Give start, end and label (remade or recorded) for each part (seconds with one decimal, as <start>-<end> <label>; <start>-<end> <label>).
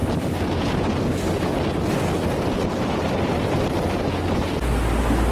0.0-5.3 recorded